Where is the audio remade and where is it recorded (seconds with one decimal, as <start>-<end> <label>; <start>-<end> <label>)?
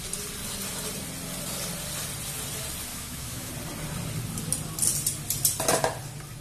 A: 0.0-2.9 recorded; 2.9-3.5 remade; 3.5-6.4 recorded